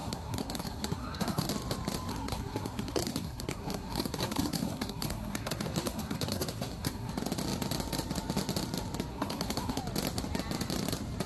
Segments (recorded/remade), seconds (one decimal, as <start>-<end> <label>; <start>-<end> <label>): 0.0-1.5 remade; 1.5-2.1 recorded; 2.1-7.1 remade; 7.1-9.1 recorded; 9.1-9.8 remade; 9.8-11.3 recorded